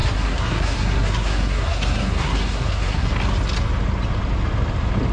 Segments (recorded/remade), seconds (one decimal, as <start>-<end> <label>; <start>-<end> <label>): 0.0-3.1 remade; 3.1-5.1 recorded